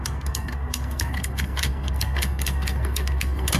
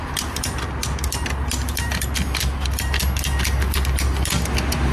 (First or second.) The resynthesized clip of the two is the first